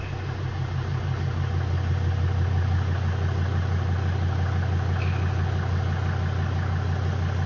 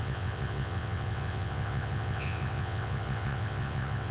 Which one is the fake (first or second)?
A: second